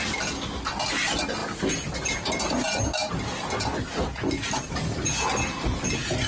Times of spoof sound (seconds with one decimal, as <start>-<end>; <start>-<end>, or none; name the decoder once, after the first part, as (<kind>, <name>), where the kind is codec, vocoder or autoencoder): none